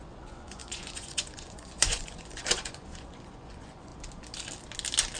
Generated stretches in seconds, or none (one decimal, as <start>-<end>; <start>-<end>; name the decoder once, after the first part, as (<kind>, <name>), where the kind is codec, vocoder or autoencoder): 0.0-3.9 (vocoder, Vocos)